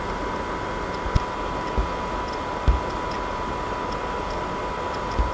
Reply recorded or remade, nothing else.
recorded